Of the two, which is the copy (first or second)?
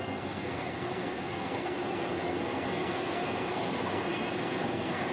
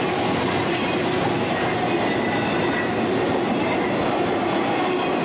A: first